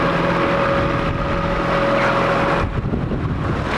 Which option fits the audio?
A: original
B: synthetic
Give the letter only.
A